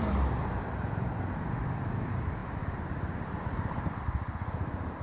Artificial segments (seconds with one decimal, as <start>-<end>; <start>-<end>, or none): 0.0-5.0